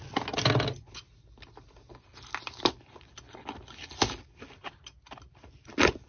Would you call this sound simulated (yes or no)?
no